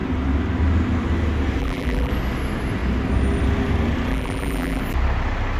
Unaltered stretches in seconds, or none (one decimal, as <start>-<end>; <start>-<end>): 0.0-1.6; 2.1-4.1; 4.8-5.6

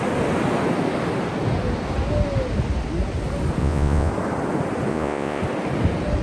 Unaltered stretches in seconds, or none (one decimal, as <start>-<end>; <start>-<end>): 0.0-3.6; 4.1-4.9; 5.4-6.2